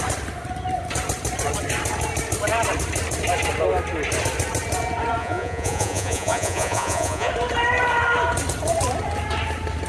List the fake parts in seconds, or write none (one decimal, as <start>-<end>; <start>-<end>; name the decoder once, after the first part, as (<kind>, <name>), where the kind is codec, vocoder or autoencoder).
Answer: 5.2-7.3 (vocoder, Vocos)